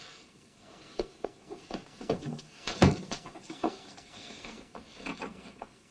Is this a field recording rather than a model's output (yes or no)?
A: no